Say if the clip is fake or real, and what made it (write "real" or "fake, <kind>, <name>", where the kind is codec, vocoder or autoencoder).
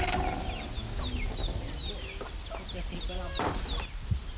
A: real